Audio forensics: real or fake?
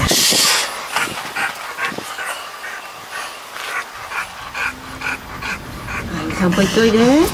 real